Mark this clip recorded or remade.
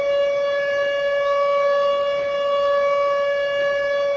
recorded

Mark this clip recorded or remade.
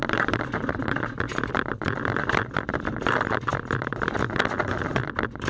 recorded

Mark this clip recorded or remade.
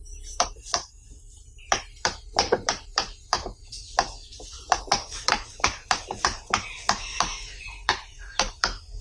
remade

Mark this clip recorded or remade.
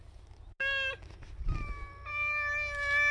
recorded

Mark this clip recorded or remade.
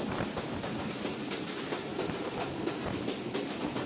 recorded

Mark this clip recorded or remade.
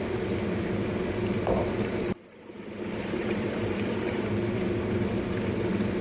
remade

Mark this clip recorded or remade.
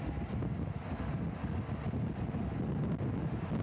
recorded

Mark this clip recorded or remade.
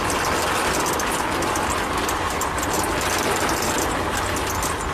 recorded